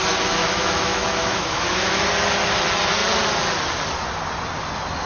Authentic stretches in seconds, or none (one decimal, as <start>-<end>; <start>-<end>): 0.0-0.4; 2.1-5.1